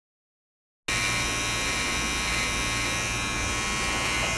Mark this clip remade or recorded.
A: recorded